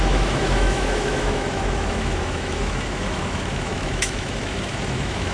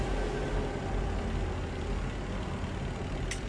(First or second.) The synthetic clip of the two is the first